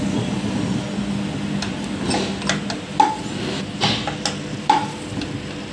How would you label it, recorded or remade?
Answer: recorded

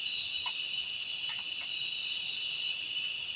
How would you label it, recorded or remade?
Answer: recorded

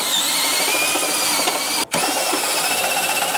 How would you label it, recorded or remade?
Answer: recorded